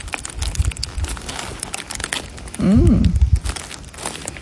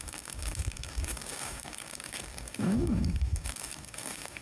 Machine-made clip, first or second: second